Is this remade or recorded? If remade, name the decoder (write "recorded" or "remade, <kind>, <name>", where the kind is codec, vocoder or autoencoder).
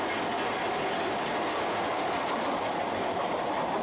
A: recorded